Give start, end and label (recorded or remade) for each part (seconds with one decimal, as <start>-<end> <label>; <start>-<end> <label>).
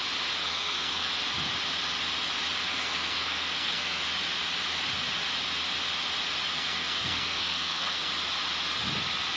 0.0-0.4 recorded; 0.4-1.1 remade; 1.1-2.7 recorded; 2.7-4.0 remade; 4.0-6.5 recorded; 6.5-8.1 remade; 8.1-9.4 recorded